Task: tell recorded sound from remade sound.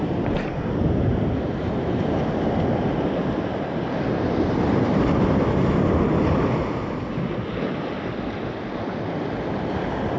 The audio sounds recorded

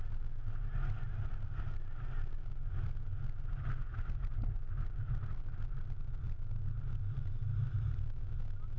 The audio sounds recorded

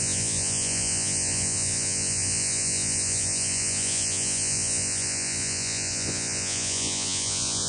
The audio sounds remade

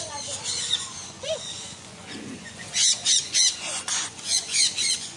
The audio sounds remade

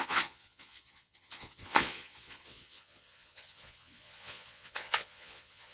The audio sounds remade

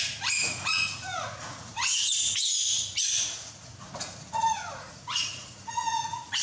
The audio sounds remade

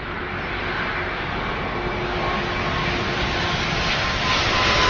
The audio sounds recorded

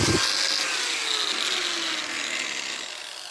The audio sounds recorded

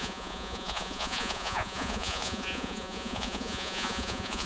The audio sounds remade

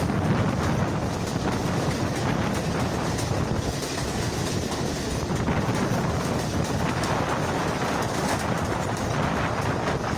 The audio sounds recorded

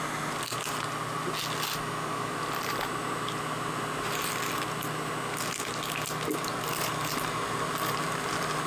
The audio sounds recorded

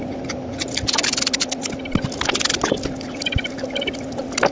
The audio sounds recorded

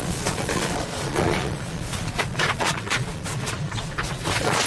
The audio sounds remade